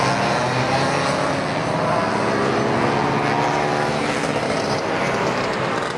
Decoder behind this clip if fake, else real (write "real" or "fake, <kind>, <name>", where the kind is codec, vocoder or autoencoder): real